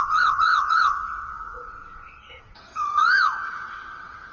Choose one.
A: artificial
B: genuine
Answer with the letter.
A